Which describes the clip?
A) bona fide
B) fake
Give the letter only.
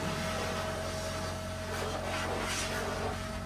A